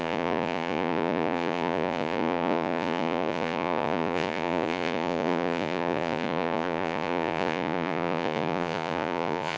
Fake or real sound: fake